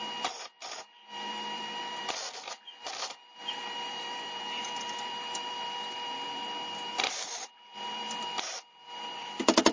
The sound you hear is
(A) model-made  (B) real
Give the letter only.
A